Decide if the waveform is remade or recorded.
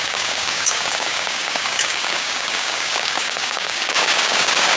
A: remade